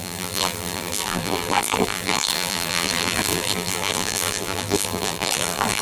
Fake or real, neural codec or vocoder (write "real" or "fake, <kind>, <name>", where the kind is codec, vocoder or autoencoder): fake, vocoder, BigVGAN v2